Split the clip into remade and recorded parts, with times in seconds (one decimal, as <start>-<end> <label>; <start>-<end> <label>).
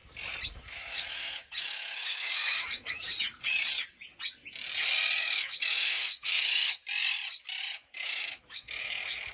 0.0-0.5 recorded; 0.5-3.1 remade; 3.1-5.2 recorded; 5.2-6.8 remade; 6.8-7.6 recorded; 7.6-9.3 remade